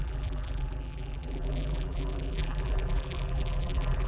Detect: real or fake fake